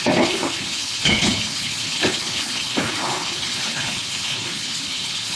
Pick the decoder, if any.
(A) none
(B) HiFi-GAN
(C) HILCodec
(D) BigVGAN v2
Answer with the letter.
C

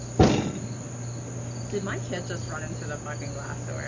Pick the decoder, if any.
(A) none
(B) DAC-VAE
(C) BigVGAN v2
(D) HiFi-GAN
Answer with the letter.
A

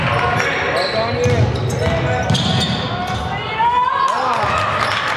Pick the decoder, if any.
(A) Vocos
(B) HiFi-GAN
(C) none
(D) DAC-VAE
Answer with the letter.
C